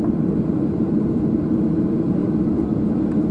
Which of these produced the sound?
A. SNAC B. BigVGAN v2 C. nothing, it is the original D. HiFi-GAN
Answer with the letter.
C